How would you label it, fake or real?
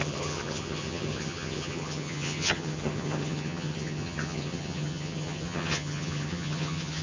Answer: fake